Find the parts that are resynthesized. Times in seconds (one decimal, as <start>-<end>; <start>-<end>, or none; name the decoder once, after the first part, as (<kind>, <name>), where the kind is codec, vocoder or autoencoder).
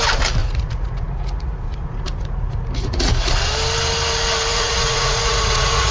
0.4-3.3 (vocoder, Vocos); 4.5-5.9